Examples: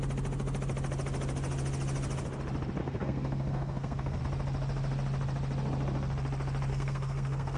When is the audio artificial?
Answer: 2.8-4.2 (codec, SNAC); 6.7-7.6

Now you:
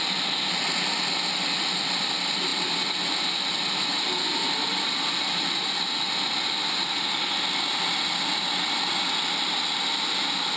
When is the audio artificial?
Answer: none

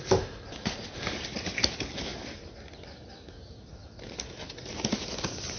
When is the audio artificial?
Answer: none

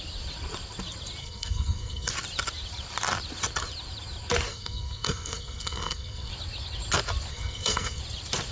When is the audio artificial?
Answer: 1.2-2.1 (codec, SNAC); 4.5-6.3; 7.3-8.0

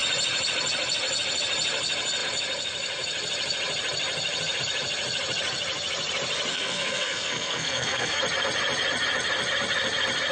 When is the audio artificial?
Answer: 6.5-8.2 (codec, SNAC)

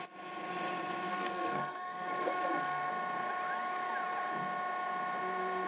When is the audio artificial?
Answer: 1.1-2.9 (codec, SNAC)